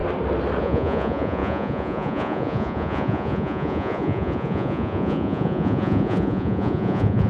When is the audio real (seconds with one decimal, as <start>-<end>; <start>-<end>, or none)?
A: 0.0-0.6